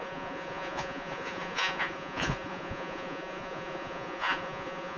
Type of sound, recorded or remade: remade